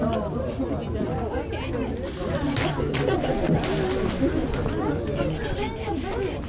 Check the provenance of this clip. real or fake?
real